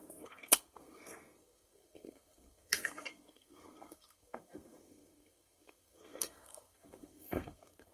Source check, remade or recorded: remade